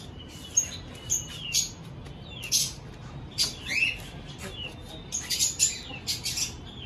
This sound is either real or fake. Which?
real